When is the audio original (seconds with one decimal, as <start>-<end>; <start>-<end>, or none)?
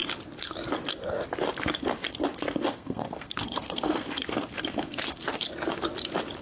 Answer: 0.0-2.7; 5.5-6.4